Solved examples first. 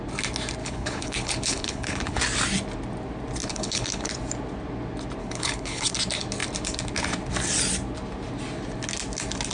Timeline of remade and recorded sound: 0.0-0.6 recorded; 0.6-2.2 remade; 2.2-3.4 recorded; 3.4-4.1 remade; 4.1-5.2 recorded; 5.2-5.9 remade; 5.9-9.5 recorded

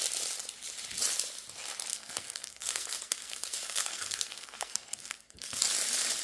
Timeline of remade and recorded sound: 0.0-1.9 recorded; 1.9-5.6 remade; 5.6-6.2 recorded